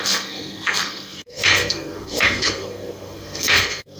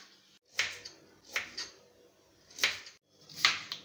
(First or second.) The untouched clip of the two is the second